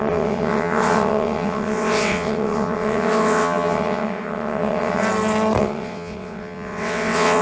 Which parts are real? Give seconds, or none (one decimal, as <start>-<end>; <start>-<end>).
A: 5.0-5.6